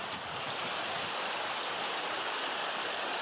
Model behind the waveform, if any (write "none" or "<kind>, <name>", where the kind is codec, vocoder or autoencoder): none